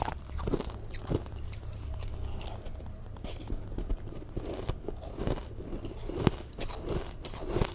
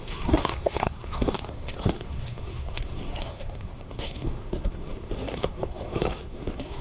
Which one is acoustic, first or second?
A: first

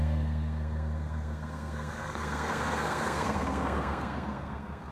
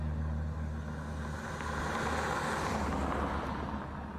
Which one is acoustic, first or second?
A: second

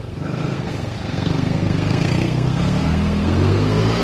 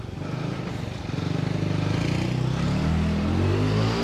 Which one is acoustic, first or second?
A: second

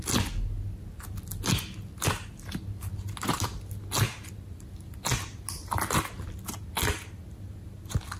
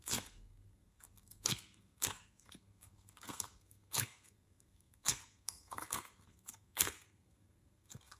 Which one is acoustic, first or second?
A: first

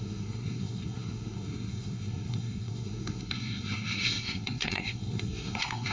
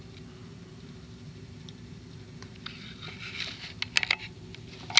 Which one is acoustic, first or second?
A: second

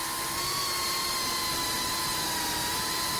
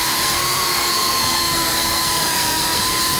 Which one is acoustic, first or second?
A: first